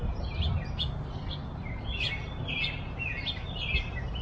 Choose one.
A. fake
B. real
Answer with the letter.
B